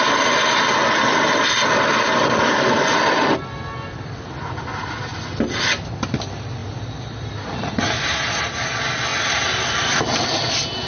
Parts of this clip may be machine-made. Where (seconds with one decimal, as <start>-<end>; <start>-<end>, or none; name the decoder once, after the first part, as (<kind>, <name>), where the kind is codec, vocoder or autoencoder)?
0.8-4.2 (vocoder, BigVGAN v2); 9.1-10.5